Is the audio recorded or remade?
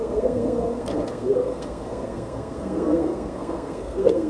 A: remade